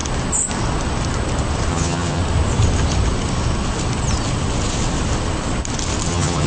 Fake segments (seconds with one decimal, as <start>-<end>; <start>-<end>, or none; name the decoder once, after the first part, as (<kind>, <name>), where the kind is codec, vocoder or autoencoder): 1.7-2.2 (vocoder, HiFi-GAN); 6.1-6.5